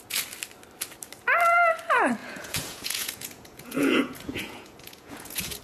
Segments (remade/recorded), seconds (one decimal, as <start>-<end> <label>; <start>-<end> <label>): 0.0-2.2 recorded; 2.2-5.6 remade